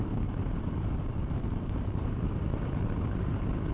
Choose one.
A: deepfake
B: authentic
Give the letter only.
A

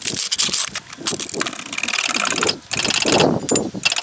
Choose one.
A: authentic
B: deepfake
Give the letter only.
A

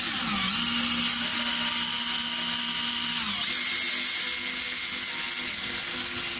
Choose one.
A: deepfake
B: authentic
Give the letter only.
B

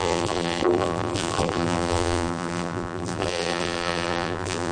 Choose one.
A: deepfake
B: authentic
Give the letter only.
A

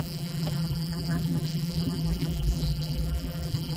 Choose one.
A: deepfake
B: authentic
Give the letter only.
A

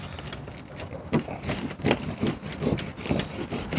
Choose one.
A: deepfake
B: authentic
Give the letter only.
B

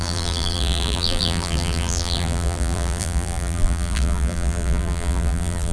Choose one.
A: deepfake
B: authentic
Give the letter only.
A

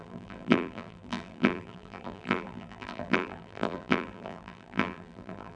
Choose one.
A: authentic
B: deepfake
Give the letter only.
B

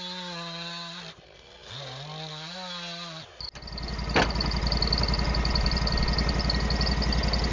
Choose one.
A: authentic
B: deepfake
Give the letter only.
A